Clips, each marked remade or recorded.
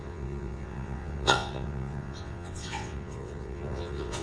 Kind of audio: remade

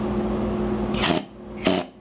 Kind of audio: recorded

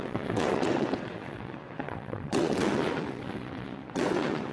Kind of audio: remade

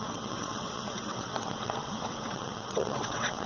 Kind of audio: remade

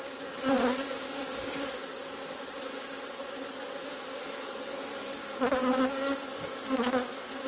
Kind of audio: recorded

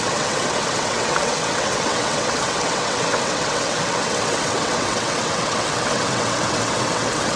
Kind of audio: remade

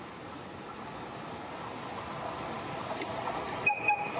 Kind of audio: recorded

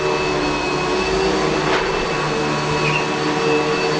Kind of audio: recorded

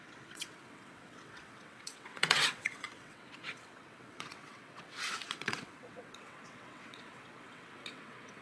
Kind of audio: remade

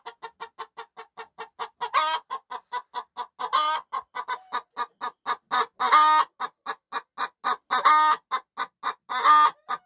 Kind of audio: recorded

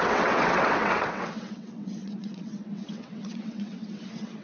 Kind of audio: remade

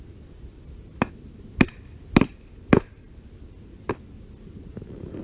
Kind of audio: recorded